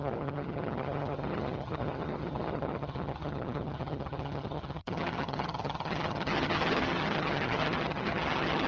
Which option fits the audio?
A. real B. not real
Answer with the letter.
B